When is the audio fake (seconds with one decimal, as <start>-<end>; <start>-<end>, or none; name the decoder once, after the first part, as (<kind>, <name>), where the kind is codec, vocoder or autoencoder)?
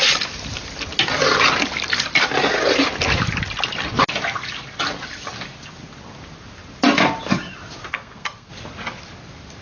7.9-8.5 (codec, SNAC)